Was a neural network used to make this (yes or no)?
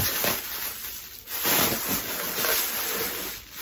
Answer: no